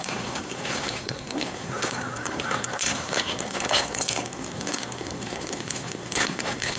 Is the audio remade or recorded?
remade